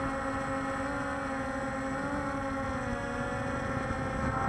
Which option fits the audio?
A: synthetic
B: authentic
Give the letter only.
B